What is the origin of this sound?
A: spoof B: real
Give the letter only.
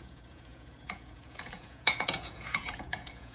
A